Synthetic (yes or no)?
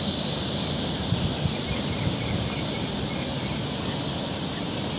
no